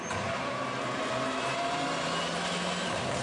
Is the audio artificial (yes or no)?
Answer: no